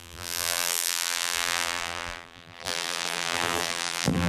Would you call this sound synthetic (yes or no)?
yes